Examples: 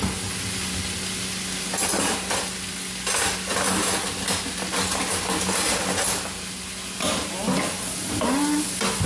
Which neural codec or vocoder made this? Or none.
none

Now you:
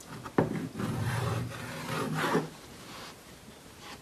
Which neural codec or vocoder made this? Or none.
none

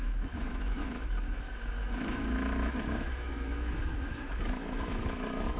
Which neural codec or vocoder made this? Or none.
autoencoder, DAC-VAE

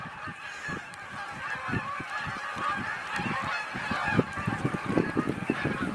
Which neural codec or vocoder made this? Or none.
vocoder, BigVGAN v2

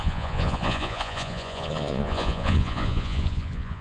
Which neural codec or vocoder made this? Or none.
vocoder, Vocos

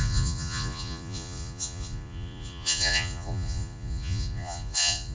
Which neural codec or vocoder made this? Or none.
vocoder, Vocos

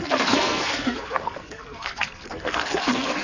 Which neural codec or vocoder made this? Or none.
codec, SNAC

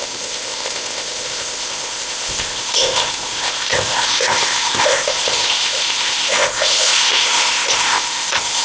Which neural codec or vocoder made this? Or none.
codec, ZipCodec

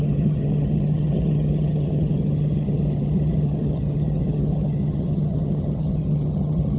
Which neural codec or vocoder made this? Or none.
vocoder, HiFi-GAN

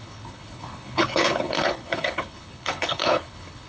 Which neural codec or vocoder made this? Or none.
codec, HILCodec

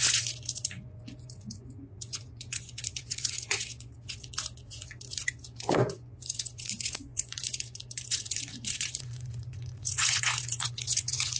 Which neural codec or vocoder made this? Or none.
vocoder, Vocos